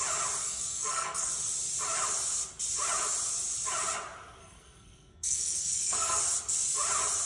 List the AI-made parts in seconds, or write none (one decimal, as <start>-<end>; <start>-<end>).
0.4-1.3; 4.4-6.2